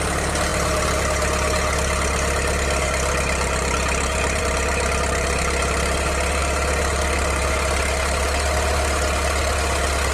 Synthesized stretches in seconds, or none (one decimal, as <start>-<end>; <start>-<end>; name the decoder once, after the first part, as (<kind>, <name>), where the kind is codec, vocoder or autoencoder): none